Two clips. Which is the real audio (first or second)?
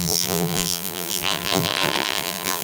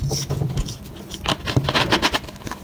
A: second